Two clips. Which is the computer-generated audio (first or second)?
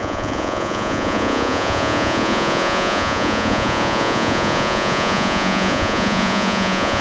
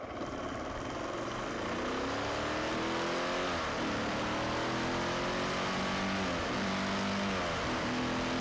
first